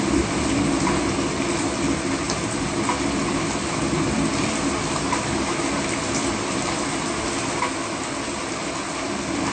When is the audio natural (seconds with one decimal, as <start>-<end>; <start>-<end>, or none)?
0.0-9.5